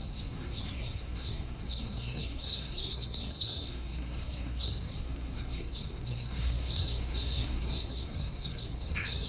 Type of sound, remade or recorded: remade